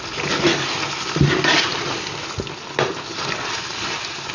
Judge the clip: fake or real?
real